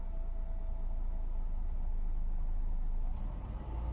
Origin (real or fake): real